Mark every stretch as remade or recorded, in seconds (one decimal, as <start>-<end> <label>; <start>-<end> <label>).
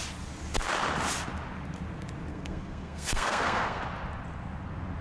0.0-2.3 recorded; 2.3-3.8 remade; 3.8-5.0 recorded